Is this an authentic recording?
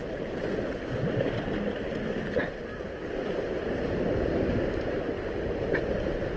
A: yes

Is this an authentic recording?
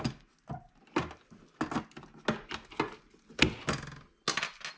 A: yes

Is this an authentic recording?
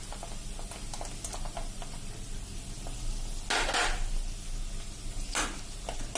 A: yes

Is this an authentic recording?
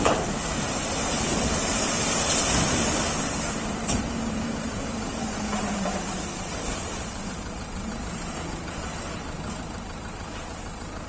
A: no